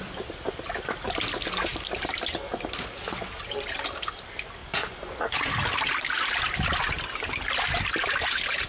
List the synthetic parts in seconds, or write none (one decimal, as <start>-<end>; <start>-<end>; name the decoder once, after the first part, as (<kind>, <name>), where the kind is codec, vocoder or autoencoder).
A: 4.6-5.5 (vocoder, Vocos)